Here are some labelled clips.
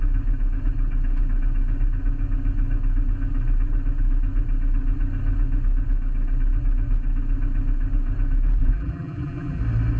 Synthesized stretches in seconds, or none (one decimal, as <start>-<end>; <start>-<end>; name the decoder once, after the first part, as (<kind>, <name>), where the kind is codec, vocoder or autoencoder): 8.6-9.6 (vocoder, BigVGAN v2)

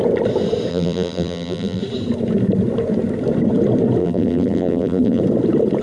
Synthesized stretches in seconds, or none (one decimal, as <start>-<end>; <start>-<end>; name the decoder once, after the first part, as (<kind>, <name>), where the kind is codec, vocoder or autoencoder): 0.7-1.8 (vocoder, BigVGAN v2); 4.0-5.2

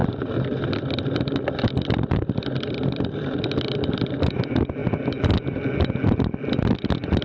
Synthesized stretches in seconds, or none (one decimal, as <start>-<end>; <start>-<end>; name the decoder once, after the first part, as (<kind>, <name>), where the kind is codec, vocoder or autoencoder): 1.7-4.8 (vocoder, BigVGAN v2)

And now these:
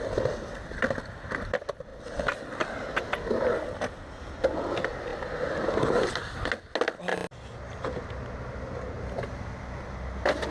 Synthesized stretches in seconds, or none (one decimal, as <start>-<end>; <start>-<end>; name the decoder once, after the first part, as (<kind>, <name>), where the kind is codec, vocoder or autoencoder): none

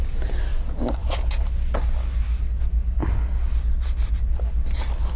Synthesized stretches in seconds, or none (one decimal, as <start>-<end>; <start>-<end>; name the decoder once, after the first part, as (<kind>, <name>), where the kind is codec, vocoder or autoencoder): none

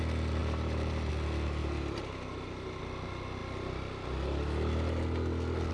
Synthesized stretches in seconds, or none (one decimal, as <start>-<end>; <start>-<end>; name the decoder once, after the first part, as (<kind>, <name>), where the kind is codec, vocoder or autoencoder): 0.4-1.1 (vocoder, BigVGAN v2); 1.6-2.8

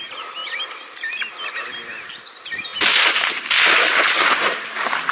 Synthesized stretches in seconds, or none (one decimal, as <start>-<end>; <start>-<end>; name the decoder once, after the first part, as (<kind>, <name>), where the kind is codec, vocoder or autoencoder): 0.0-5.1 (vocoder, BigVGAN v2)

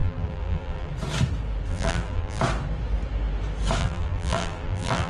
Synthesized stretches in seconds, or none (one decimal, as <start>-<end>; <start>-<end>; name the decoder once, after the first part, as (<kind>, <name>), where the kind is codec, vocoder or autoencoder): 0.0-0.9 (vocoder, BigVGAN v2); 1.7-2.4; 3.8-5.1